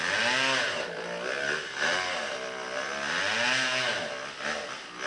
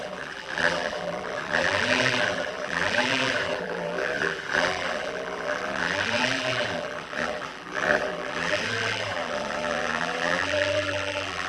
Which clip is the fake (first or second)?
second